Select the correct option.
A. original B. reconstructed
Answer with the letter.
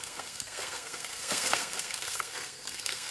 B